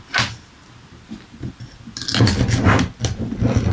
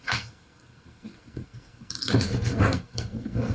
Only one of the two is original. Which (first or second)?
first